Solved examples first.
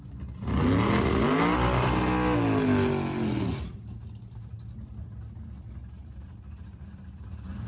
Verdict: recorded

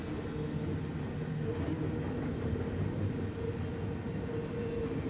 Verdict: recorded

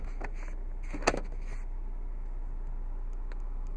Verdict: recorded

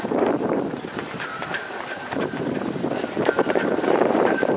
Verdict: remade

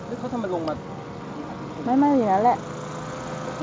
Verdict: recorded